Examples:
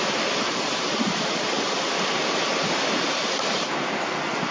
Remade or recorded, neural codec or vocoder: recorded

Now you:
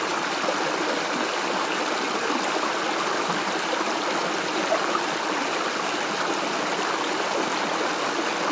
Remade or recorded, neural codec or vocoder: recorded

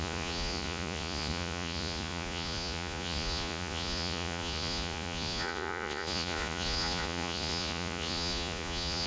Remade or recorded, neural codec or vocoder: remade, vocoder, Vocos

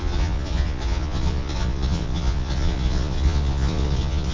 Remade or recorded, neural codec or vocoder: remade, vocoder, Vocos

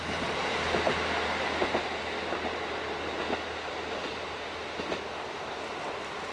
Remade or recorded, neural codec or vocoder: recorded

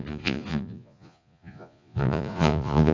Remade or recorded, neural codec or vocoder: remade, vocoder, Vocos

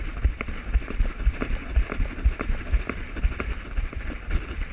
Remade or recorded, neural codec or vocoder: recorded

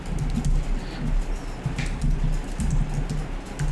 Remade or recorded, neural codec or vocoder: recorded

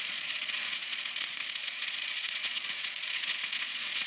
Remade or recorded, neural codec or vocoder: remade, vocoder, Vocos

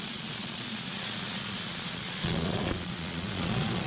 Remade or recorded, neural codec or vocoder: remade, vocoder, Vocos